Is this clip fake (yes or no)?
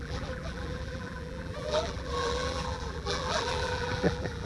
yes